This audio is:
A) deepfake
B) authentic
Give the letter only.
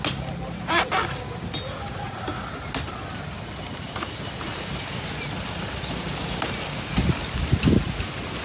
B